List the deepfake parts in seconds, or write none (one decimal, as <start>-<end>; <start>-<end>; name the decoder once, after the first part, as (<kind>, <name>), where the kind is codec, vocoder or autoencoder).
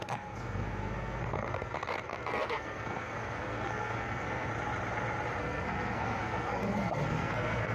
0.0-4.5 (codec, SNAC); 5.4-7.7